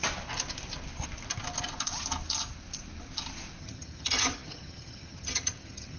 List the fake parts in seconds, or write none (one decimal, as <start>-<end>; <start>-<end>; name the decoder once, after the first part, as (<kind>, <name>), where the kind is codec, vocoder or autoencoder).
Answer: 3.6-6.0 (vocoder, HiFi-GAN)